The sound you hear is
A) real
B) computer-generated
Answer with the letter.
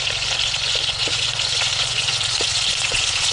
B